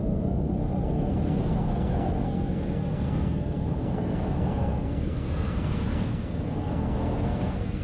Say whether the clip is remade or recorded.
remade